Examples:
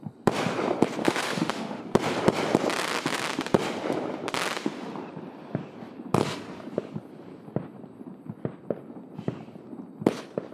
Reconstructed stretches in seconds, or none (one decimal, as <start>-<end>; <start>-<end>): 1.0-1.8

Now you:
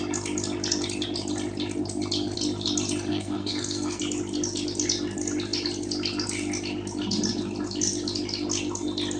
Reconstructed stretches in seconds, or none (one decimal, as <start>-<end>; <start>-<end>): 3.1-4.0

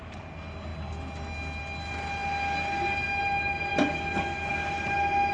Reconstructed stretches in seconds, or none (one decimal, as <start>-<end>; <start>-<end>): none

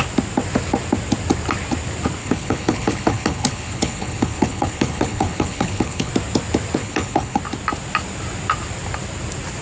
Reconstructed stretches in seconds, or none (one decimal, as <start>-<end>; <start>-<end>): 2.2-6.1; 6.8-7.4

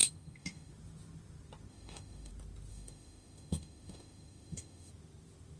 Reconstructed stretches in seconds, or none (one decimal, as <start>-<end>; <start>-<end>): 0.0-0.7; 1.7-2.3; 2.7-4.9

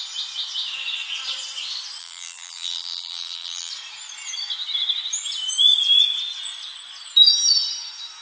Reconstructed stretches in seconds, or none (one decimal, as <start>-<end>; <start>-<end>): 2.0-3.7

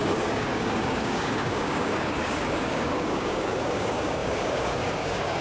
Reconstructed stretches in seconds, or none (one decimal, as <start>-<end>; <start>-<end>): 0.0-5.4